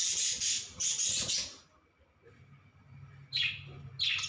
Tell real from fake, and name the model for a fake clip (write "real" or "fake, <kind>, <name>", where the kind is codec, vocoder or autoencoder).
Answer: real